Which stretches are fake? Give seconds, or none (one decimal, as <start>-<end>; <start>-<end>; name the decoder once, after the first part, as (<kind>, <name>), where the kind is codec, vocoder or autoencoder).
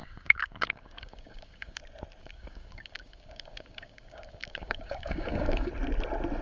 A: 0.0-1.8 (codec, DAC); 2.2-5.7